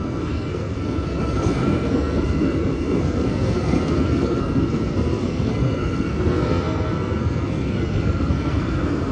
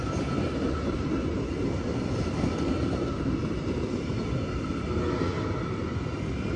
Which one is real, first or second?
second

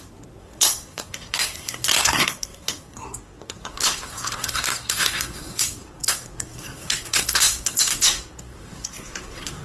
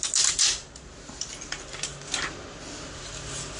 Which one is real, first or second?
second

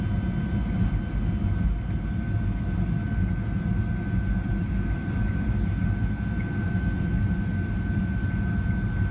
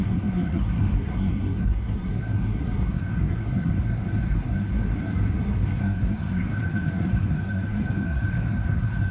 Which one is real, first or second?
first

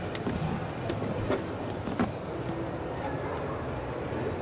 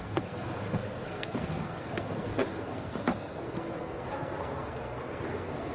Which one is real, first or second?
first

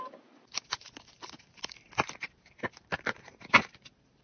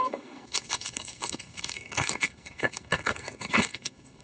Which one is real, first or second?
first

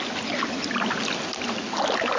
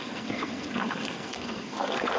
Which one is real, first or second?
first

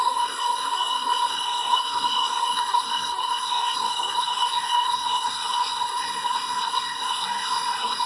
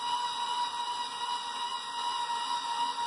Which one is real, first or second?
second